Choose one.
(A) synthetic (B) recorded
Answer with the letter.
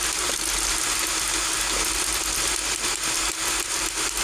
B